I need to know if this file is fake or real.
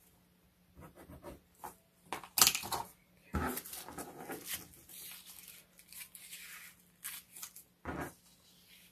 real